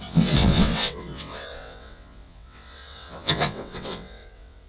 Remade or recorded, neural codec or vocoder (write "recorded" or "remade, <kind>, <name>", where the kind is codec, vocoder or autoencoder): remade, vocoder, WaveNeXt